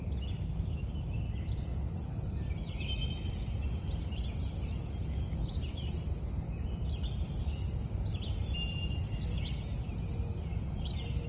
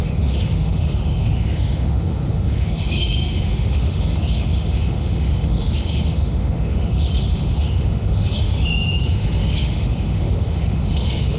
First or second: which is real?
first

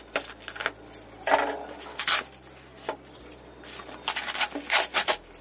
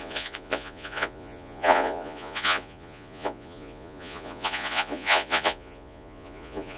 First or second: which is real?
first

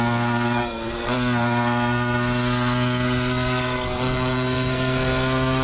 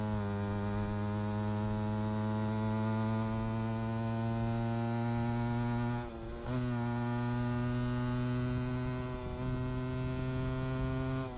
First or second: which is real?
second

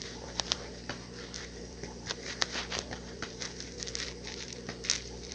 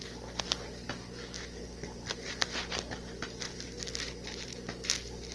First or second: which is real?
second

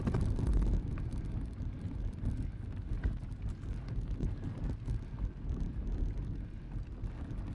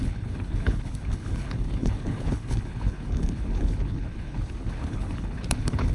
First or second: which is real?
first